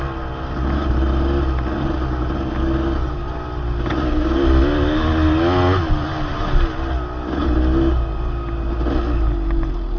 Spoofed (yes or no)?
no